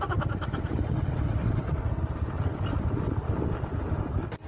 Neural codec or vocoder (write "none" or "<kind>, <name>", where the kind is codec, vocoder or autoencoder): none